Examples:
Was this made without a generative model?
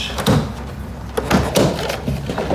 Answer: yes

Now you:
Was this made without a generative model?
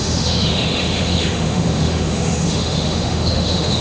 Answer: no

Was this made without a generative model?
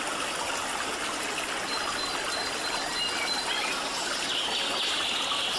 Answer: yes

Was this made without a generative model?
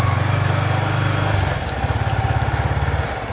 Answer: yes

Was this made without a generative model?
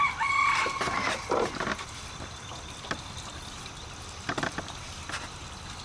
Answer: yes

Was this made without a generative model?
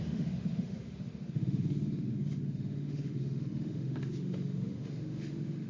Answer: no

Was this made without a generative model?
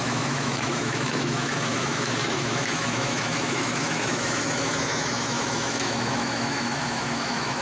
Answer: no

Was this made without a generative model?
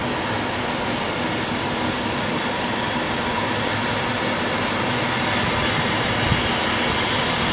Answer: yes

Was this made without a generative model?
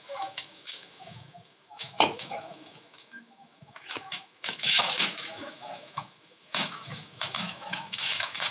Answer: no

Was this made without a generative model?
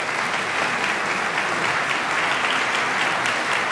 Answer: yes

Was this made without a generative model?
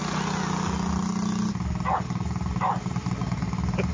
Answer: yes